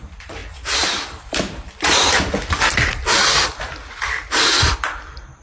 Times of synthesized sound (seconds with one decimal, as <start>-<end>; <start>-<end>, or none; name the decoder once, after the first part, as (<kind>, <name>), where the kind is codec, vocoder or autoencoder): 0.0-5.4 (vocoder, BigVGAN v2)